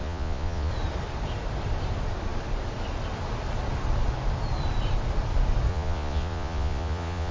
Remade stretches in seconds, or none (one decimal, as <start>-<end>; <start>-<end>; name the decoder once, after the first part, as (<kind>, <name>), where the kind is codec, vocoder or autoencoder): 0.0-0.7 (vocoder, Vocos); 5.7-7.3